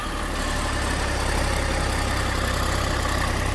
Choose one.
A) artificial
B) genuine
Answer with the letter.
B